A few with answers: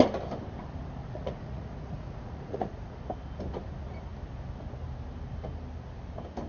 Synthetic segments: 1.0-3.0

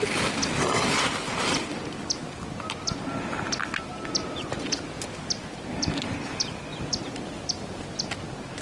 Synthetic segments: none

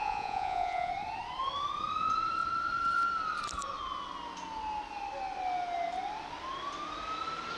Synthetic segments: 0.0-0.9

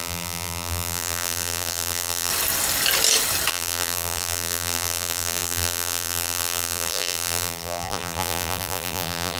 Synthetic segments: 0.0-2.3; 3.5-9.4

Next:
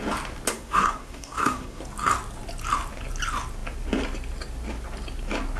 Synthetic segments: 0.5-1.8

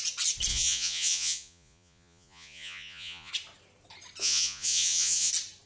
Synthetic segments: 0.5-3.3; 4.2-5.3